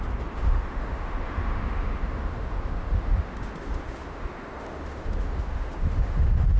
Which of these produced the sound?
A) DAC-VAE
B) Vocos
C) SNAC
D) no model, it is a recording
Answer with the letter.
A